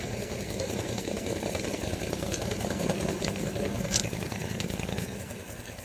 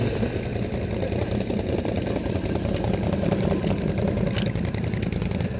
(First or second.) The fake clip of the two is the first